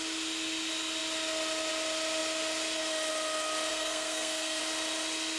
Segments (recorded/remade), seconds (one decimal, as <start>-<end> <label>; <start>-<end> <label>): 0.0-3.7 recorded; 3.7-4.6 remade; 4.6-5.4 recorded